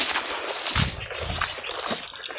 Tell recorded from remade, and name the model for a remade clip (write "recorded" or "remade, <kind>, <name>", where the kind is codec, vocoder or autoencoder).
recorded